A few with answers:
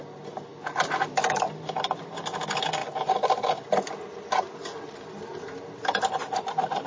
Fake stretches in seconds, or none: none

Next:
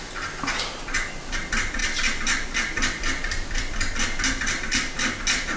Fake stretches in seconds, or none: none